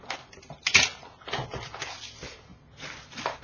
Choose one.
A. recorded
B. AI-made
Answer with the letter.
A